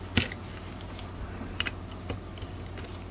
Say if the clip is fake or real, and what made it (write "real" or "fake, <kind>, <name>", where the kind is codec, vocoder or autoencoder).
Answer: real